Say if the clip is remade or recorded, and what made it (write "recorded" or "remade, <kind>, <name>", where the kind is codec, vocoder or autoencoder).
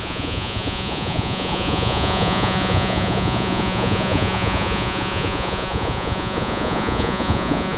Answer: remade, vocoder, Vocos